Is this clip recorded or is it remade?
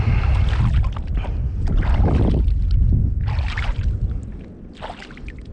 recorded